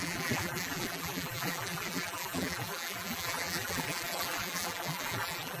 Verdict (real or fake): fake